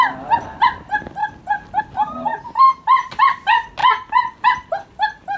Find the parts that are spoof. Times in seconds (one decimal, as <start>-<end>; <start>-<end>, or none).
none